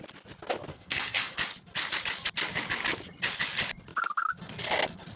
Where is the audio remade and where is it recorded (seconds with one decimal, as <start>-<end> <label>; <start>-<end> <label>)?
0.0-0.7 recorded; 0.7-1.4 remade; 1.4-5.2 recorded